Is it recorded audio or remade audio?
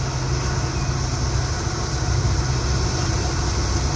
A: recorded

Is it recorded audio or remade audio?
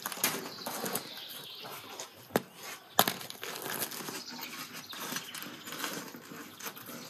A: recorded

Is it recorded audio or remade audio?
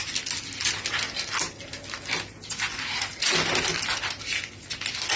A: recorded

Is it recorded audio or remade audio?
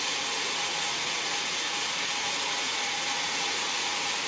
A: remade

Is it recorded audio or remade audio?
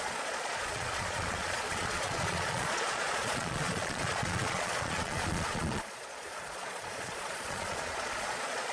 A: remade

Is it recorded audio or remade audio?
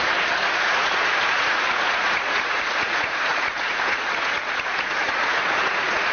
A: remade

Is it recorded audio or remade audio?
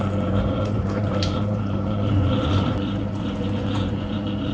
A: remade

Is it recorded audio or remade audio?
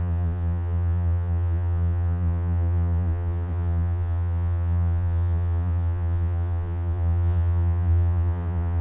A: remade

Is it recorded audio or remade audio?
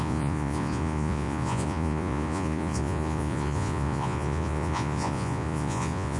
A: remade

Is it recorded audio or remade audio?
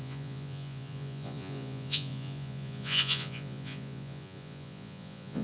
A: remade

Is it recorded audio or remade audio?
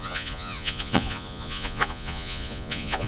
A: remade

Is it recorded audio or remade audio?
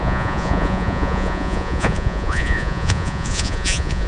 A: remade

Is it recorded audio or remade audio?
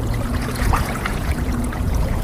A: remade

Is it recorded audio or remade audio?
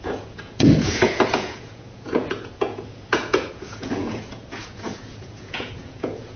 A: remade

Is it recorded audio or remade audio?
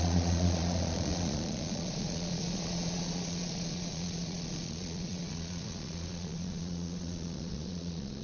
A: remade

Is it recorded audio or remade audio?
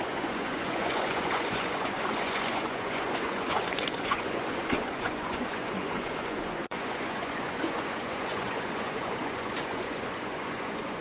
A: remade